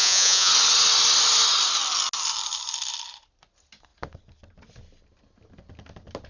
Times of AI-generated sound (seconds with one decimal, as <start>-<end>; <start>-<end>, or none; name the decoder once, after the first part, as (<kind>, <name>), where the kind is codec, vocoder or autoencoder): 0.0-0.5 (vocoder, Vocos)

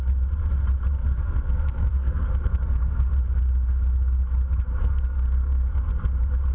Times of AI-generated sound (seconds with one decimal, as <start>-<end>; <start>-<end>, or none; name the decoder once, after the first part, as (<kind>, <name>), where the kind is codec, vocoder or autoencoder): 1.0-3.1 (codec, SNAC); 4.8-5.9